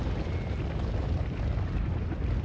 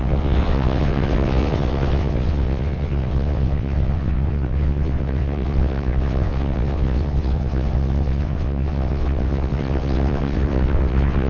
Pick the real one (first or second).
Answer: first